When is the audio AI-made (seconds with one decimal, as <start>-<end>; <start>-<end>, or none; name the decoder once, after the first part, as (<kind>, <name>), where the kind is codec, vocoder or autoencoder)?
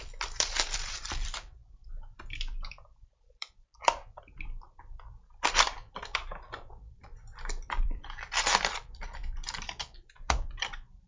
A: 0.0-11.1 (vocoder, BigVGAN v2)